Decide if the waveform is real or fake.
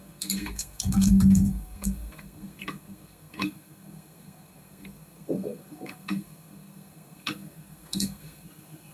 fake